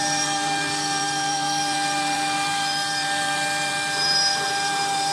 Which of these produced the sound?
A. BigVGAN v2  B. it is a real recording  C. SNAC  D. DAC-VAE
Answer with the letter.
A